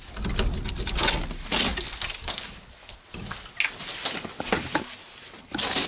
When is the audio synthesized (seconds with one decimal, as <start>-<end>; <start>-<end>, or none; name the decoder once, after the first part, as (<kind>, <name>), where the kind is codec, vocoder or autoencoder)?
none